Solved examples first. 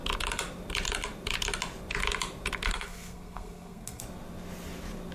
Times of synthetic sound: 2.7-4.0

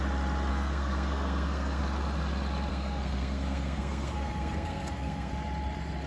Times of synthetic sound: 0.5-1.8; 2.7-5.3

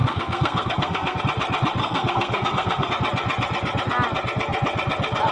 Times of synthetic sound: 0.0-1.2; 1.8-2.9

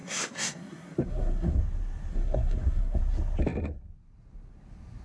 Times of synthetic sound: 0.0-1.6; 2.1-3.0

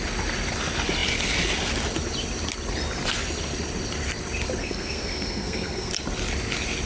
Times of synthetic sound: 4.6-5.9

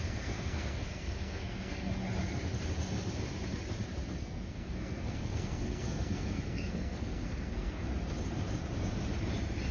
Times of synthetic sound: 0.0-2.0; 4.1-7.9

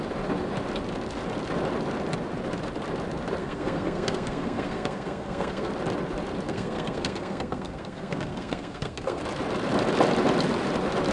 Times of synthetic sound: 3.4-5.7; 6.5-9.2